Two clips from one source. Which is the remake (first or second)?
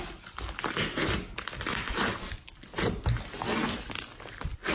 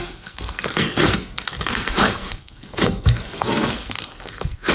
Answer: second